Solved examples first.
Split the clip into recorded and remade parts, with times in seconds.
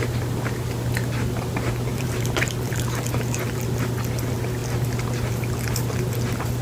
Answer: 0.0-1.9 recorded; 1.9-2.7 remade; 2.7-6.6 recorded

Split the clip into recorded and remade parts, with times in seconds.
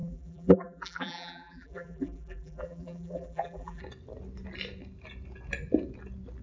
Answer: 0.0-3.8 remade; 3.8-6.4 recorded